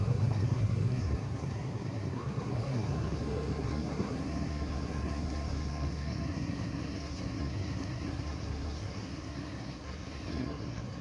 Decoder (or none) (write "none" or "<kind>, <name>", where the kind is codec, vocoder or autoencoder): codec, SNAC